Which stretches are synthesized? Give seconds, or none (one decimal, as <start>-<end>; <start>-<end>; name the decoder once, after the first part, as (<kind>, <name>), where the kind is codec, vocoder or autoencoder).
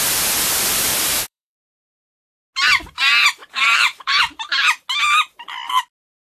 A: 0.9-1.6 (vocoder, BigVGAN v2); 3.4-4.2